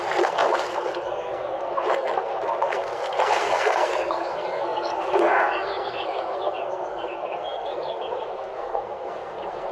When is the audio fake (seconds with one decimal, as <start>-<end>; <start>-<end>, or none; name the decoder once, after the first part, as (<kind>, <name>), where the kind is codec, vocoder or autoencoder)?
0.0-9.7 (codec, SNAC)